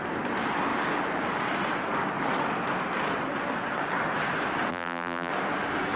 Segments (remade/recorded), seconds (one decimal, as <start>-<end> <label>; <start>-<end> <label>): 0.0-4.7 recorded; 4.7-5.3 remade; 5.3-6.0 recorded